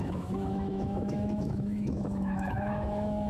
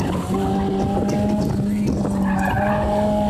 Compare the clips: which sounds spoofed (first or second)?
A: first